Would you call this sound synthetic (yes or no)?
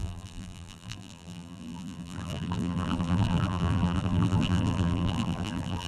yes